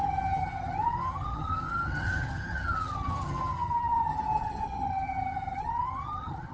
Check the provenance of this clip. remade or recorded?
remade